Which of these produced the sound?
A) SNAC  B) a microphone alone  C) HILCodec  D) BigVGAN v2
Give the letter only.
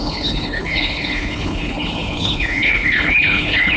C